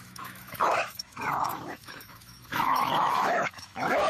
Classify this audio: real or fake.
fake